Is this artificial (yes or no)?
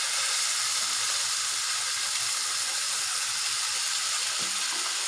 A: no